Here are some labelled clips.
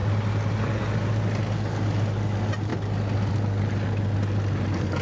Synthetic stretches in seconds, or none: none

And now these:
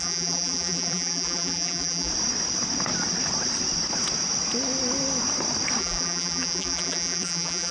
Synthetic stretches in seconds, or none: 0.0-2.1 (vocoder, BigVGAN v2); 5.8-7.7

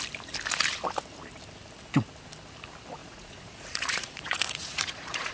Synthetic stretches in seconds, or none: 3.0-5.3 (vocoder, Vocos)

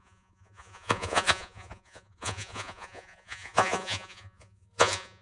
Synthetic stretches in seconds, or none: 0.0-5.2 (vocoder, Vocos)

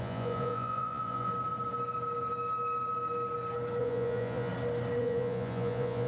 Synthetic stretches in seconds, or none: 0.0-1.3 (vocoder, Vocos); 3.8-4.5; 5.0-6.1

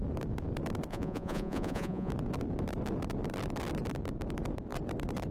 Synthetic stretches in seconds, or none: 0.9-2.1 (vocoder, Vocos)